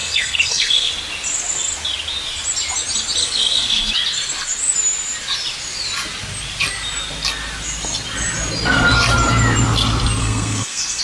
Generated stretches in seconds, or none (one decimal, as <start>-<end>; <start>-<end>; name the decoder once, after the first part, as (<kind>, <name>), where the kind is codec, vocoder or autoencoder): 0.0-0.9 (codec, SNAC); 3.2-3.9; 10.2-11.0